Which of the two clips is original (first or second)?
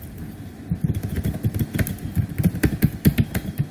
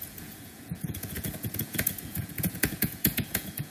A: first